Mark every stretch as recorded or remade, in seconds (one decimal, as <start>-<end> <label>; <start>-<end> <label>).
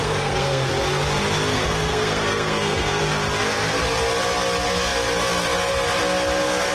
0.0-0.7 remade; 0.7-1.5 recorded; 1.5-3.0 remade; 3.0-6.7 recorded